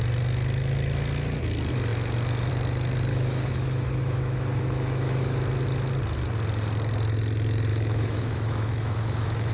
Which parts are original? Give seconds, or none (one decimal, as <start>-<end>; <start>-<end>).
0.0-3.1; 5.4-7.7

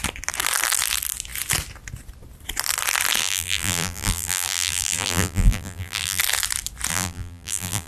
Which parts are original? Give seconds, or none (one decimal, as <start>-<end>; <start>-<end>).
0.0-3.2; 6.2-6.9

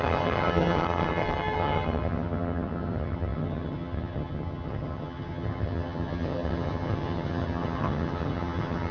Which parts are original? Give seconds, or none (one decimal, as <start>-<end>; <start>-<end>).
none

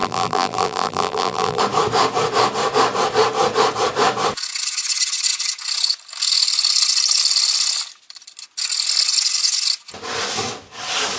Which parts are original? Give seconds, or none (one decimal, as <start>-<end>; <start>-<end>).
1.6-11.2

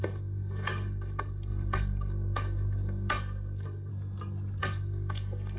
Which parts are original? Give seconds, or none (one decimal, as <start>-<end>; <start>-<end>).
3.9-4.6

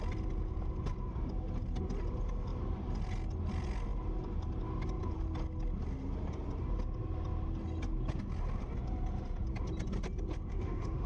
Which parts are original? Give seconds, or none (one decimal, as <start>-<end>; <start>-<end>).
0.0-10.5

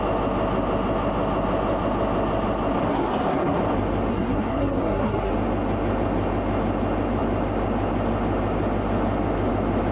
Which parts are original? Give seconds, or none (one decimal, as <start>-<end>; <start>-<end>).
0.0-2.9; 3.6-4.1; 5.3-9.9